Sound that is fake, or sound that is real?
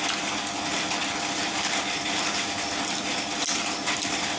real